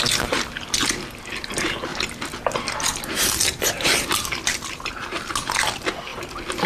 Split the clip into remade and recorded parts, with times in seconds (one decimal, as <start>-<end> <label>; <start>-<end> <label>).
0.0-4.5 recorded; 4.5-5.3 remade; 5.3-6.7 recorded